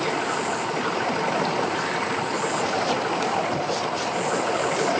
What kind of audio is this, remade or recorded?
recorded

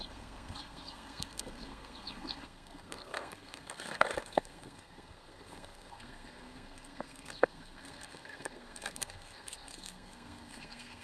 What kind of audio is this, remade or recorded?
remade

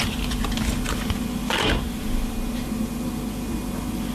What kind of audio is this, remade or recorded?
recorded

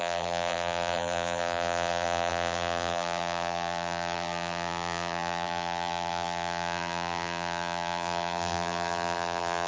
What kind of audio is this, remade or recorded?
remade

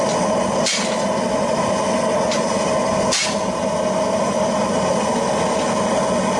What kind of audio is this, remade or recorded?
recorded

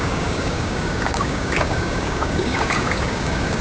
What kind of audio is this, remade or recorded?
remade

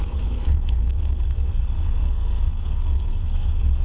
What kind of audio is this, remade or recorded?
remade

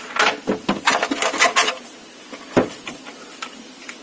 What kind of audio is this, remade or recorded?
recorded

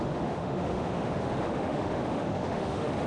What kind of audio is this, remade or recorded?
remade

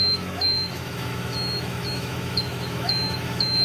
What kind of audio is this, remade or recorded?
remade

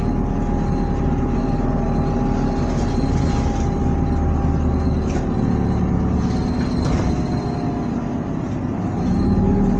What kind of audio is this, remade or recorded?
recorded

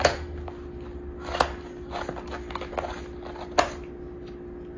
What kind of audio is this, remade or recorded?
recorded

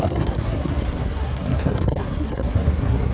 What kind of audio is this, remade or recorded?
remade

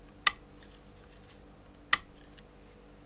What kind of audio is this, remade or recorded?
recorded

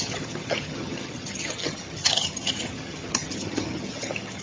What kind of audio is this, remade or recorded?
remade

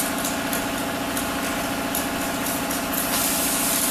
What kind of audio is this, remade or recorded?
recorded